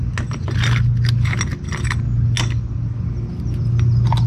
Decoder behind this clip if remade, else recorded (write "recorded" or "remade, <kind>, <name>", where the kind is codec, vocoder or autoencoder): recorded